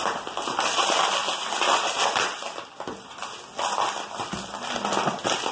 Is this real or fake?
real